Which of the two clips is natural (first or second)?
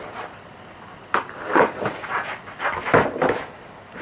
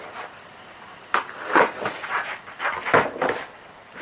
second